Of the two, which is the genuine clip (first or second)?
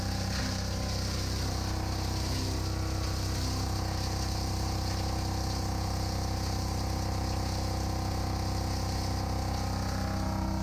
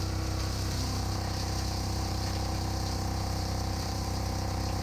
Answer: first